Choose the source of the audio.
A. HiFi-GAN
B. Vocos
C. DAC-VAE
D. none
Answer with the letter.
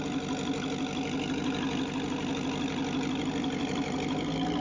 D